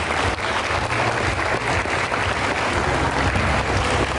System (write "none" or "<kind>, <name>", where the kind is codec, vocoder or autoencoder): none